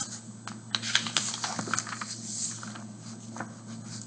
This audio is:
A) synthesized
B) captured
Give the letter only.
B